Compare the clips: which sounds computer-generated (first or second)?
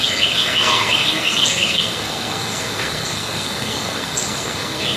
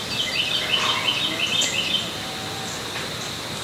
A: first